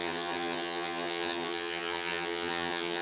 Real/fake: fake